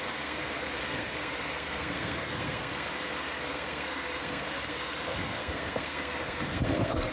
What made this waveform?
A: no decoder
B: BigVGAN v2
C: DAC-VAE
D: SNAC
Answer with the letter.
D